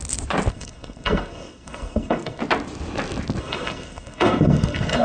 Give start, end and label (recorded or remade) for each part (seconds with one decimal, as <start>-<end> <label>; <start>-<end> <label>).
0.0-0.5 recorded; 0.5-2.4 remade; 2.4-3.4 recorded; 3.4-5.0 remade